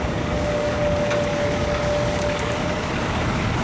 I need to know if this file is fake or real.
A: fake